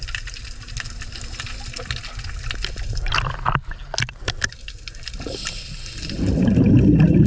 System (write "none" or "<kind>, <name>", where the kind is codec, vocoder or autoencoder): none